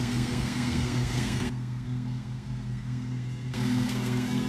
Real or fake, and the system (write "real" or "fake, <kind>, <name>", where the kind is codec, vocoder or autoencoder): fake, codec, SNAC